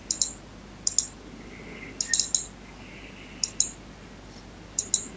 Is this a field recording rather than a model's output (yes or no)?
yes